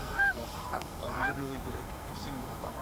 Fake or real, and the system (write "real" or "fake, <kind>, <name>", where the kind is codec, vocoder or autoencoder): fake, codec, SNAC